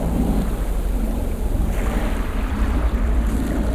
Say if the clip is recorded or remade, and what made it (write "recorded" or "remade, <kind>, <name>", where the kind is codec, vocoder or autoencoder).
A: remade, vocoder, BigVGAN v2